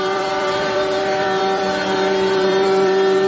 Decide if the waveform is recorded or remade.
remade